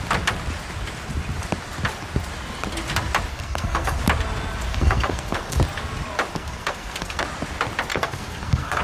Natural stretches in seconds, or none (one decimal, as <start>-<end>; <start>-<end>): 0.0-3.3; 4.0-4.7; 5.6-6.3; 7.2-7.9